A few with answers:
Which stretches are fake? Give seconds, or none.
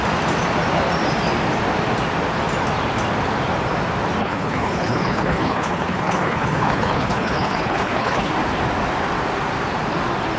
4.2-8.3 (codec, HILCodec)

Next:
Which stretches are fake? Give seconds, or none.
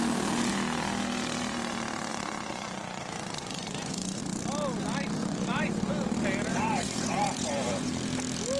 2.1-4.2 (vocoder, Vocos); 5.2-5.9; 6.5-7.9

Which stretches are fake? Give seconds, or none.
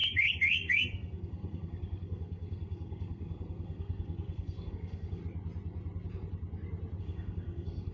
0.0-5.2 (codec, SNAC); 7.0-7.9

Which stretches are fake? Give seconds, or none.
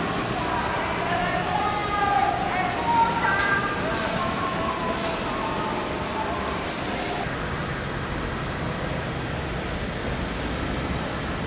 4.2-4.7 (autoencoder, DAC-VAE)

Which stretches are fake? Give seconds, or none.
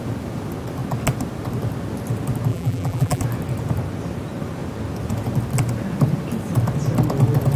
2.5-3.2 (vocoder, BigVGAN v2)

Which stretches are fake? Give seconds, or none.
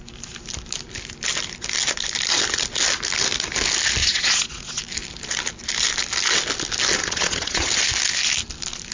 4.0-4.8 (vocoder, Vocos); 7.0-7.7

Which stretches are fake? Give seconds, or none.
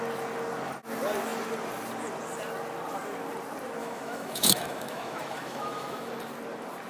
3.8-6.1 (autoencoder, DAC-VAE)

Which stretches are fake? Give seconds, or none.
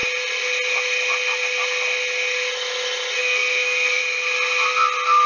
3.2-4.0 (codec, SNAC)